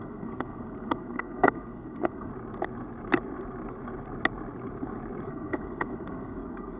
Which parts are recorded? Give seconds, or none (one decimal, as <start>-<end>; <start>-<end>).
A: 2.3-5.3